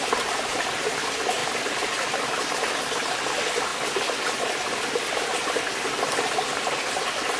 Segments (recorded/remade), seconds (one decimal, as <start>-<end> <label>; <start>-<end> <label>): 0.0-7.4 recorded